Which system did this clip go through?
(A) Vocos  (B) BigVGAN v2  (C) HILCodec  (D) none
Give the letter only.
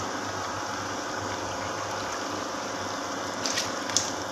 D